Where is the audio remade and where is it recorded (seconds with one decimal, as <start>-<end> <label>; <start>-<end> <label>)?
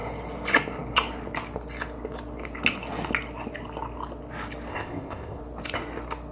0.0-4.7 recorded; 4.7-5.4 remade; 5.4-6.3 recorded